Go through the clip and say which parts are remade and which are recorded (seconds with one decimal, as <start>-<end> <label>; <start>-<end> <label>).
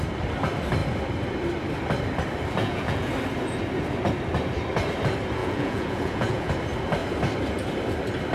0.0-2.6 recorded; 2.6-3.1 remade; 3.1-5.4 recorded; 5.4-6.5 remade; 6.5-8.3 recorded